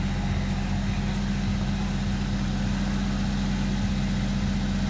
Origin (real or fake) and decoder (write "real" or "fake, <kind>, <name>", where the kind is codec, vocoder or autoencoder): real